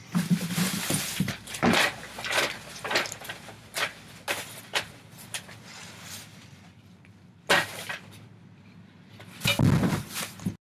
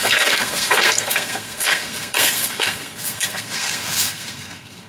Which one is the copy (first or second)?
second